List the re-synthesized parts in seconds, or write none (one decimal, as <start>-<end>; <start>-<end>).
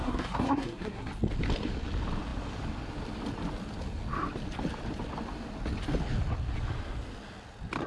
0.0-1.1